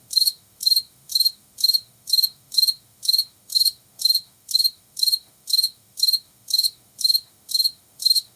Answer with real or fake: fake